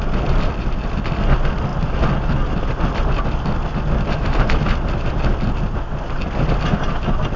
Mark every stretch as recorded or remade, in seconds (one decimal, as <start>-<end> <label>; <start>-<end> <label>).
0.0-7.4 recorded